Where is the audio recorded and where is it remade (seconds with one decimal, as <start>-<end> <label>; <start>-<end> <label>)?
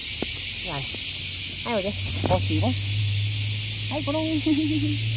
0.0-5.2 recorded